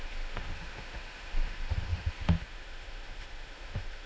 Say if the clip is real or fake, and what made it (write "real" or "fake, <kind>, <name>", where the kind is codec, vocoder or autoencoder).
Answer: fake, autoencoder, DAC-VAE